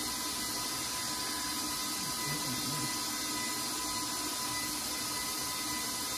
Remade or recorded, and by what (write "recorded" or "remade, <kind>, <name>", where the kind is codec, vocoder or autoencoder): recorded